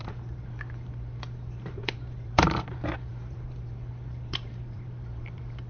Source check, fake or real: fake